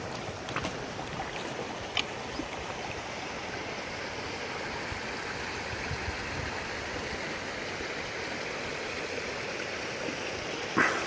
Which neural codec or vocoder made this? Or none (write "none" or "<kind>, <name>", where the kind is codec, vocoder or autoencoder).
none